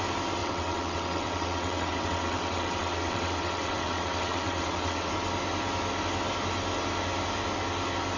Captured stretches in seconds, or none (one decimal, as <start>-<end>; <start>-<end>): 0.0-0.4; 5.1-8.2